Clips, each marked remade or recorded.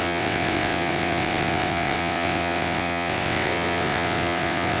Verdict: remade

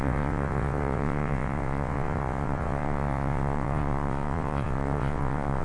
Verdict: remade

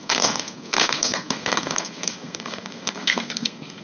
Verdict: remade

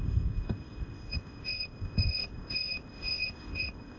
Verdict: remade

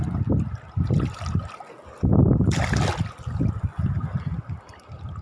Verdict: recorded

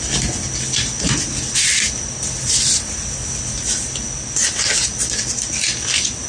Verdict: recorded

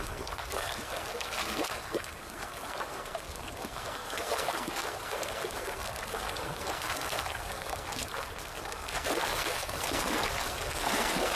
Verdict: remade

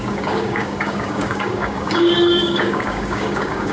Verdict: remade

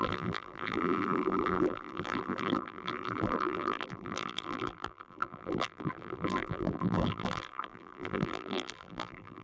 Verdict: remade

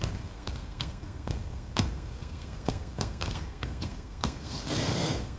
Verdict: remade